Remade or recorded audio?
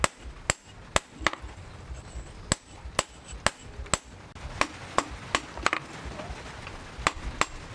recorded